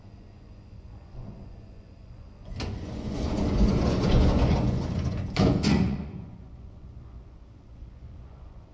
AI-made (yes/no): yes